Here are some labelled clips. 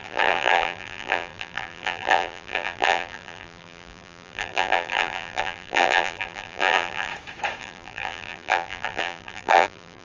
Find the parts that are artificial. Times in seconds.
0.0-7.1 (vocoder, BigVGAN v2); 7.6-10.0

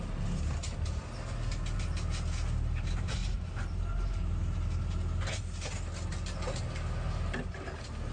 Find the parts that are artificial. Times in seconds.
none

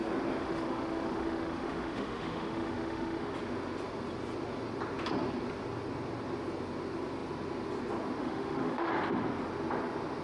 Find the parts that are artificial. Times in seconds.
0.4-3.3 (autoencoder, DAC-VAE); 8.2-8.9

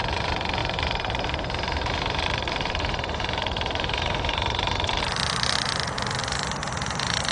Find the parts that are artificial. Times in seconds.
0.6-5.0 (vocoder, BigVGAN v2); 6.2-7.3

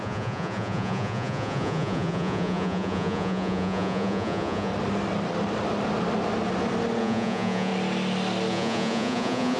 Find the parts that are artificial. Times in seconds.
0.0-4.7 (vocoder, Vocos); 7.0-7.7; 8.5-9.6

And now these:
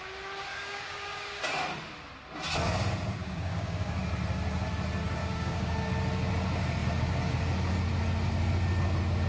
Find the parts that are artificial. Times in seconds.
0.5-1.4 (codec, DAC); 3.2-4.0; 5.2-5.9